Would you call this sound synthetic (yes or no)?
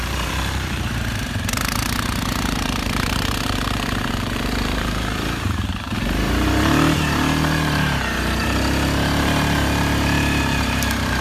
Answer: yes